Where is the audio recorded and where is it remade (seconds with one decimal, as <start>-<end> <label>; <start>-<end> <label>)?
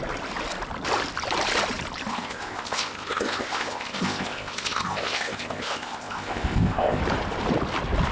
0.0-2.1 recorded; 2.1-7.0 remade; 7.0-8.1 recorded